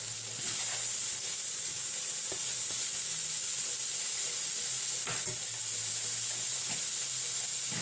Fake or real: real